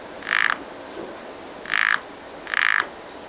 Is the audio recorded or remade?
recorded